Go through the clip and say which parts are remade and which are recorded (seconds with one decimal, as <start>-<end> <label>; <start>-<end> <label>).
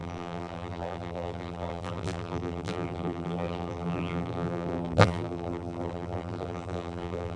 0.0-7.4 remade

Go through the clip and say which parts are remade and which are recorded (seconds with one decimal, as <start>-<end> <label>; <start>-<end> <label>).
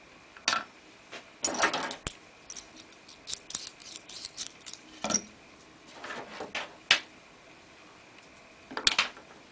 0.0-3.8 recorded; 3.8-5.4 remade; 5.4-9.5 recorded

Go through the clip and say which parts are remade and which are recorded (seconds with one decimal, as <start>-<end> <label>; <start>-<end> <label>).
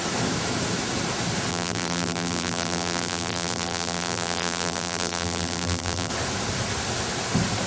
0.0-1.5 recorded; 1.5-6.1 remade; 6.1-7.7 recorded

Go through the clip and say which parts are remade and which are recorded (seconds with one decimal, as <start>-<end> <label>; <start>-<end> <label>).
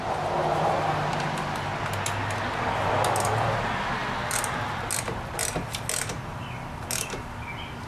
0.0-7.9 recorded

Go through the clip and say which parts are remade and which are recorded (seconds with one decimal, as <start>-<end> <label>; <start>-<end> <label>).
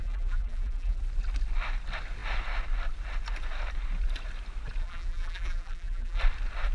0.0-1.0 remade; 1.0-4.8 recorded; 4.8-6.2 remade; 6.2-6.7 recorded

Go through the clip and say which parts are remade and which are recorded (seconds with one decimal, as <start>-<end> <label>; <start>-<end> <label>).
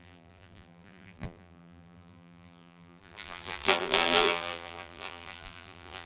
0.0-6.1 remade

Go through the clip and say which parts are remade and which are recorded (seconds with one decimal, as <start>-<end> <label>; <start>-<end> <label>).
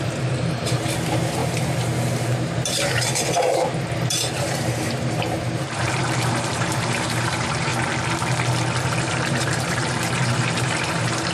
0.0-7.7 remade; 7.7-9.0 recorded; 9.0-11.3 remade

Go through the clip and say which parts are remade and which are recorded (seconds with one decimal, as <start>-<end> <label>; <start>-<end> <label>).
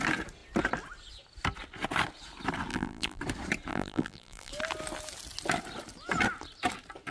0.0-2.7 recorded; 2.7-3.2 remade; 3.2-3.7 recorded; 3.7-4.5 remade; 4.5-7.1 recorded